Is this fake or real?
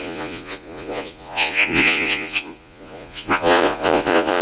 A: fake